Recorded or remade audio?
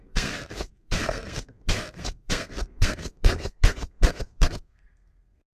remade